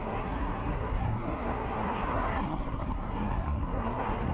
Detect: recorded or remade remade